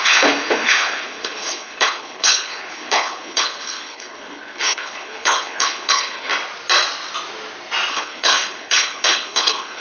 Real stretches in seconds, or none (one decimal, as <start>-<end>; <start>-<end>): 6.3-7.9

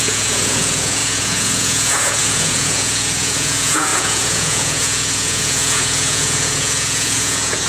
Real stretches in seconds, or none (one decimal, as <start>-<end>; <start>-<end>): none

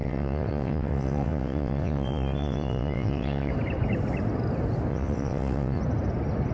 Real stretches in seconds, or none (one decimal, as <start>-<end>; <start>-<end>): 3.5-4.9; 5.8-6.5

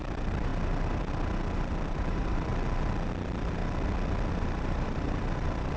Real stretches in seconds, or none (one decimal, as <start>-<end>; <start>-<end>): 0.5-1.7; 2.5-3.1; 3.6-4.3